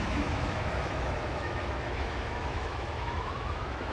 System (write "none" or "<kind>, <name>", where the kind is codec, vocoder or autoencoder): autoencoder, DAC-VAE